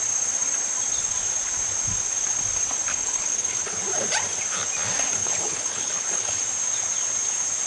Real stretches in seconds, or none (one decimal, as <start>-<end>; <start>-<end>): 0.0-2.9; 3.8-5.2; 6.4-7.7